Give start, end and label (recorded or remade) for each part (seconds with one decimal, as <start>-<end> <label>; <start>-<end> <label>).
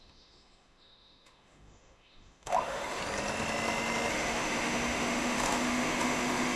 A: 0.0-3.0 remade; 3.0-4.1 recorded; 4.1-6.6 remade